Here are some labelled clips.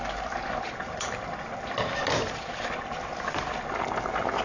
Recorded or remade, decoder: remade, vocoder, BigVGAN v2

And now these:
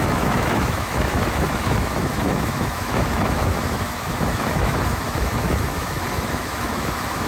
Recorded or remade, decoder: remade, autoencoder, DAC-VAE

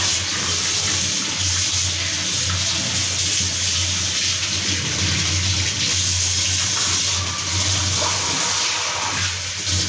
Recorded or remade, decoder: recorded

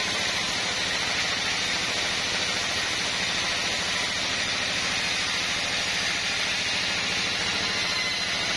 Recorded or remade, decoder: recorded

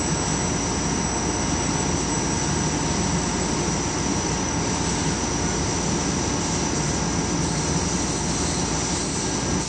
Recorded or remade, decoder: recorded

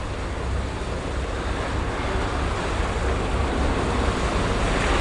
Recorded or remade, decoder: recorded